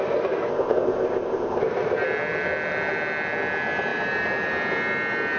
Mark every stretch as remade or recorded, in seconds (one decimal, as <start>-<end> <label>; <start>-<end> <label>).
0.0-0.5 recorded; 0.5-1.6 remade; 1.6-5.4 recorded